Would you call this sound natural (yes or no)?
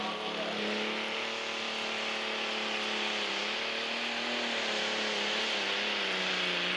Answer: yes